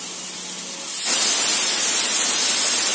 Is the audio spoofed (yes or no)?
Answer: no